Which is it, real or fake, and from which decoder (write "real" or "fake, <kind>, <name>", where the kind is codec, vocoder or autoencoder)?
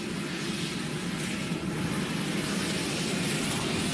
real